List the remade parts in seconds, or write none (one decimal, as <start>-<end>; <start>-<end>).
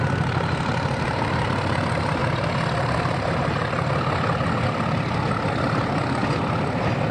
0.0-2.2; 5.5-6.2